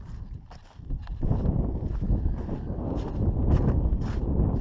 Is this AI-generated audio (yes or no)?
no